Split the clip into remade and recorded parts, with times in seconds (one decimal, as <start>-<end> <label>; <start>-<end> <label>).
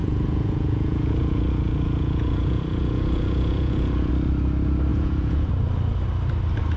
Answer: 0.0-4.1 remade; 4.1-4.9 recorded; 4.9-5.5 remade; 5.5-6.8 recorded